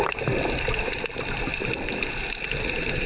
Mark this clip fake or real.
real